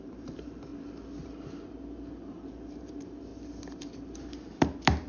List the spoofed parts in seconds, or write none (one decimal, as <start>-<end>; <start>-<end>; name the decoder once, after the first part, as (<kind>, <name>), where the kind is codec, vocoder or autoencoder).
0.0-0.7 (vocoder, BigVGAN v2); 2.3-3.3; 4.3-5.1